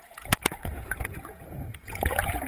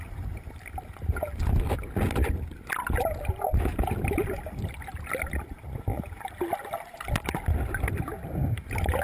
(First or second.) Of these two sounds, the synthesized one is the first